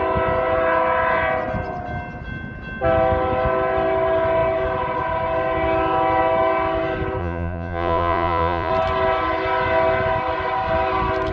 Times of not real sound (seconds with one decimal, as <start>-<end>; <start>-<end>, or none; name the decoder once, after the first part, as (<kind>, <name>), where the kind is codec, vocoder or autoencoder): 7.2-8.7 (vocoder, Vocos)